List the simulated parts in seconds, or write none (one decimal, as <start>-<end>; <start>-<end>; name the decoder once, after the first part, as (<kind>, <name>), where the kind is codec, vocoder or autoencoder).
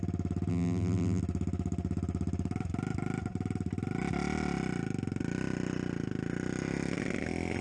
0.5-1.2 (vocoder, BigVGAN v2)